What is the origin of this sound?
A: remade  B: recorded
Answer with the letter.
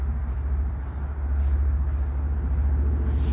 B